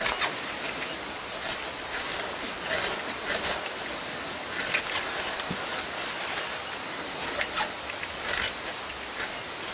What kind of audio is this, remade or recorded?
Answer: recorded